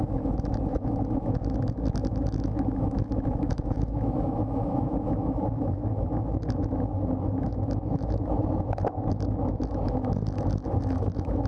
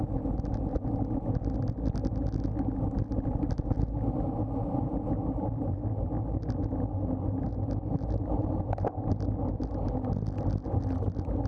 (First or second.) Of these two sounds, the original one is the second